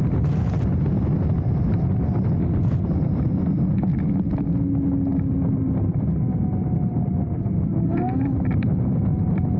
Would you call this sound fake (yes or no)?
no